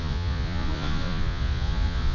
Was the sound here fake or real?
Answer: fake